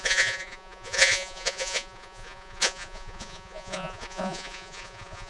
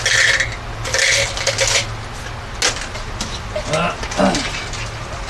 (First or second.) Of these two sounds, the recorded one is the second